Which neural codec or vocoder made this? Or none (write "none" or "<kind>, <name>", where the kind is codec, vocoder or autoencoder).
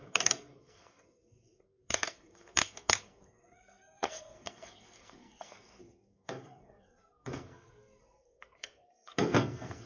codec, SNAC